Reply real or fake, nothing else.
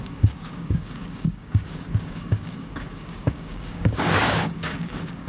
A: fake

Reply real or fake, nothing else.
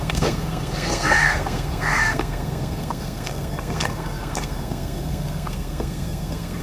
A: fake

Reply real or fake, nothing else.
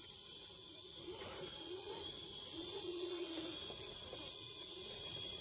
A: fake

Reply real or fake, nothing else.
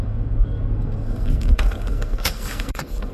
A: fake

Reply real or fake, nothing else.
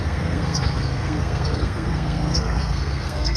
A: fake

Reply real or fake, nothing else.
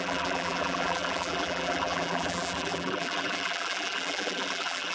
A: fake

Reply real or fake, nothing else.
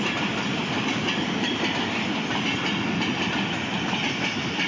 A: real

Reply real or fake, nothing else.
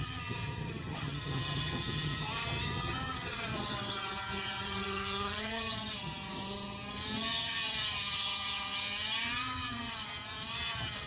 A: fake